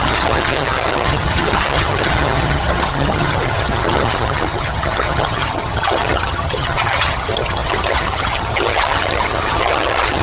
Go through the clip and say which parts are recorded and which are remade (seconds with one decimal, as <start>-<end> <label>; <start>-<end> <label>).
0.0-10.2 remade